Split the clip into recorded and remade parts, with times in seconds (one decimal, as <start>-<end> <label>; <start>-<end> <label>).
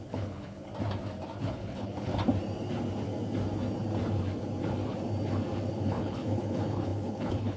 0.0-0.7 remade; 0.7-1.4 recorded; 1.4-2.1 remade; 2.1-5.7 recorded; 5.7-7.6 remade